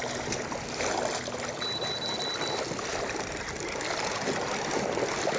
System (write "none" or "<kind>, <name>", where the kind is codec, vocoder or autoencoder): none